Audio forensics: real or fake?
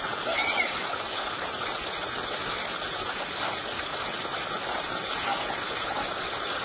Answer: real